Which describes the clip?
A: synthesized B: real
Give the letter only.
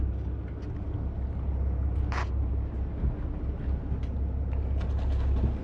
B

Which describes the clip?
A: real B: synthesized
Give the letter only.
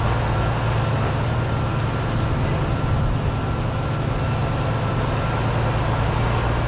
A